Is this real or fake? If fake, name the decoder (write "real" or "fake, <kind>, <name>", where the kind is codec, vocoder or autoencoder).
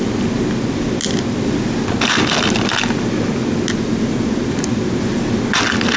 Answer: real